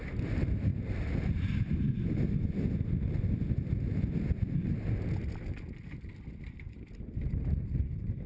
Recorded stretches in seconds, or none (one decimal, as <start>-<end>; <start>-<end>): 0.0-8.3